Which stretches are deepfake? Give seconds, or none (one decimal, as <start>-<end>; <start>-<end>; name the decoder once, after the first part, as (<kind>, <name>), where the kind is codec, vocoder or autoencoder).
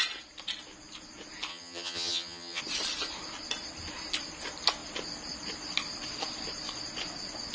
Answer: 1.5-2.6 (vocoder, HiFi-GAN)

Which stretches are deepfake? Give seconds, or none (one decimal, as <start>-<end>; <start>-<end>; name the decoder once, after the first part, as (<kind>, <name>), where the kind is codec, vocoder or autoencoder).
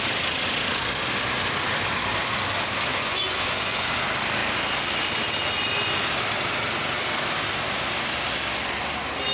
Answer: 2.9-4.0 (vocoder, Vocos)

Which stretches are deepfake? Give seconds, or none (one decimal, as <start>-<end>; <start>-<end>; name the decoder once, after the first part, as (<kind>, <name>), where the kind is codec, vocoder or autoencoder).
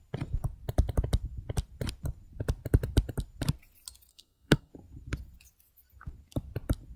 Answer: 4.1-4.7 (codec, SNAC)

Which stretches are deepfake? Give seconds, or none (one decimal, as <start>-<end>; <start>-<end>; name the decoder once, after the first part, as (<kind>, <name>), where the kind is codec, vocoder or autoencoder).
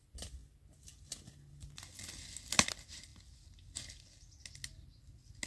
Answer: none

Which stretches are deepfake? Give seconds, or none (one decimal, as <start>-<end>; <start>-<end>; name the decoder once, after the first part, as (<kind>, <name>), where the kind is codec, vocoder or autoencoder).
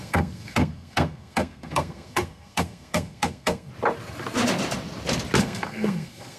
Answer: 0.0-3.7 (codec, SNAC); 5.4-6.4